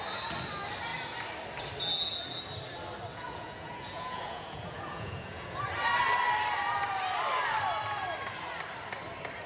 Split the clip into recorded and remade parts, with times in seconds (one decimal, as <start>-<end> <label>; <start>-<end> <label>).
0.0-3.1 recorded; 3.1-5.6 remade; 5.6-9.5 recorded